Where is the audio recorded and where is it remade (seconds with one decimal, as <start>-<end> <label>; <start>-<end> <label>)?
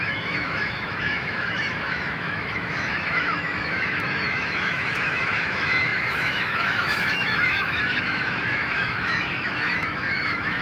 0.0-10.6 remade